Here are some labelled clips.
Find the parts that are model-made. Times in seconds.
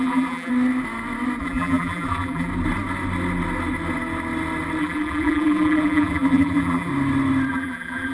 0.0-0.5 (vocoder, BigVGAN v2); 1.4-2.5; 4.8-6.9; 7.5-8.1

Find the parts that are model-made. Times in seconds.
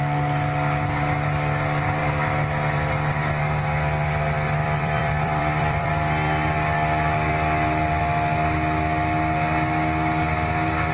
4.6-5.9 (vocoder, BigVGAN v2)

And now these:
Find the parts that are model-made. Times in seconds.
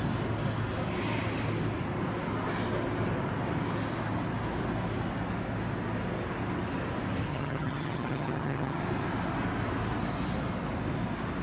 7.3-8.8 (vocoder, HiFi-GAN)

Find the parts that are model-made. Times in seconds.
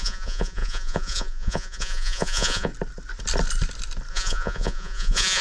0.0-2.7 (vocoder, Vocos); 4.1-5.4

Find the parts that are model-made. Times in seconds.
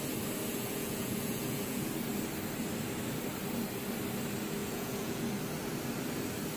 0.5-1.9 (vocoder, Vocos); 4.6-5.2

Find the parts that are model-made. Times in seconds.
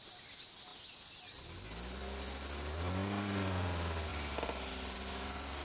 none